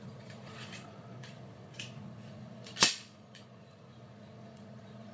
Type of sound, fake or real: fake